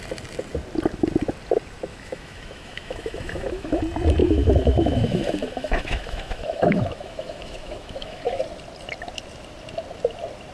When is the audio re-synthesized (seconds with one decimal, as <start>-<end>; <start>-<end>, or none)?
1.9-3.8; 4.2-8.4